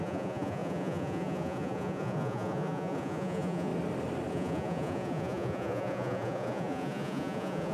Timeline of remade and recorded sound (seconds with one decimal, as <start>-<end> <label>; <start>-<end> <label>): 0.0-3.7 remade; 3.7-4.3 recorded; 4.3-7.7 remade